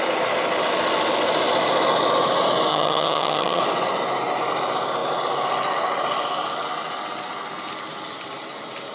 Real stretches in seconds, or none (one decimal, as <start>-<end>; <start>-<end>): 0.0-2.7; 3.6-8.9